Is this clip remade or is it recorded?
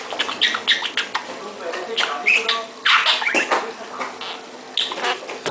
recorded